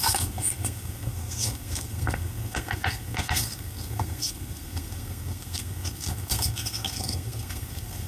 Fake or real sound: fake